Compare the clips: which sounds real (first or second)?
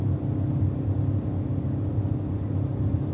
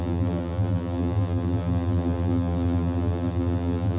first